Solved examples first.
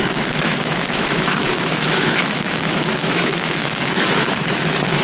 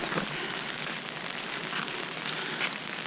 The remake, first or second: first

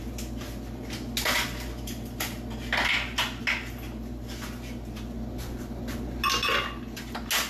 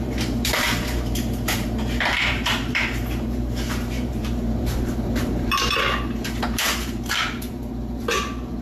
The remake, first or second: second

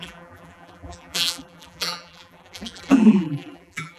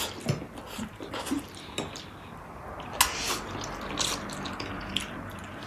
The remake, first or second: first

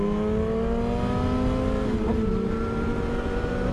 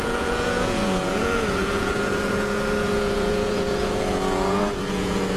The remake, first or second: second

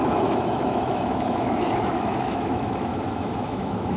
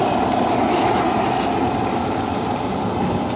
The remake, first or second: first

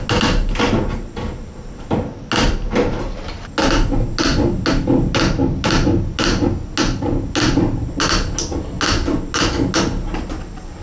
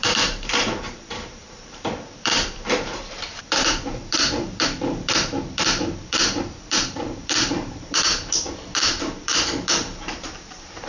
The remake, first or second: second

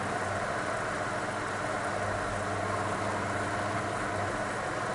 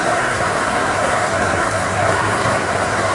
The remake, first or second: second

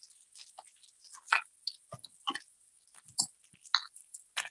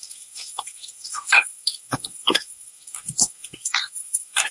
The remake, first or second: second